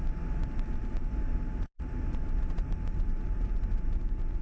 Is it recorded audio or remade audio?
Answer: remade